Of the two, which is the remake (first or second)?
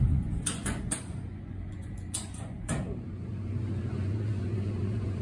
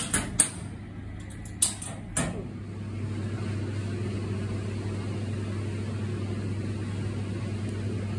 first